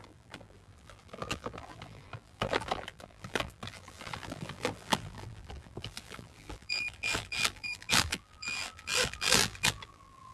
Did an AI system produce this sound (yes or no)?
yes